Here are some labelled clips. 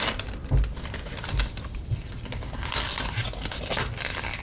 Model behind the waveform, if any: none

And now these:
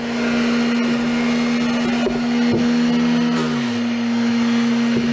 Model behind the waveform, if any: none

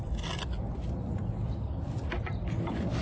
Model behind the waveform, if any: none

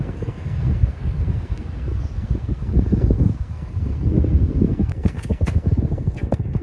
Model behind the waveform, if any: codec, SNAC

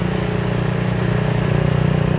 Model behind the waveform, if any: none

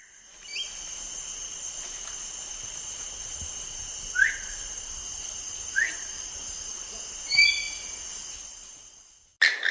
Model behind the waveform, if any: none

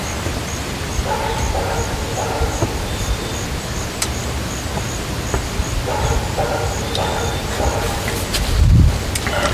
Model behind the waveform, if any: none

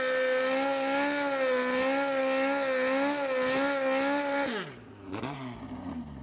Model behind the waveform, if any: none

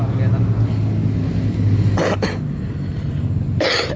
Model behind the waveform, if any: none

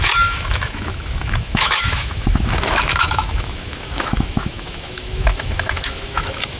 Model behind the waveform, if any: autoencoder, DAC-VAE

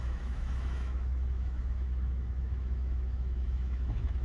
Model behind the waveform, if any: autoencoder, DAC-VAE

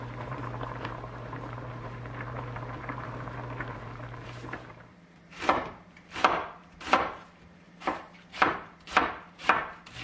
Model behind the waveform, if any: vocoder, BigVGAN v2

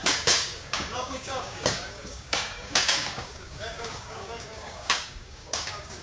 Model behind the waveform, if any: codec, DAC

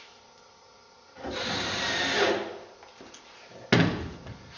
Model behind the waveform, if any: none